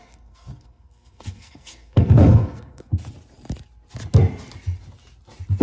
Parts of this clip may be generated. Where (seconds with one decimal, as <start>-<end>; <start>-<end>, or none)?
0.0-2.9